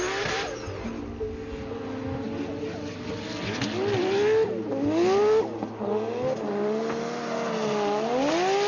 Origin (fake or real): real